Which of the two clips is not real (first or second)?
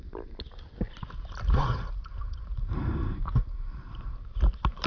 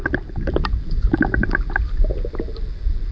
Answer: first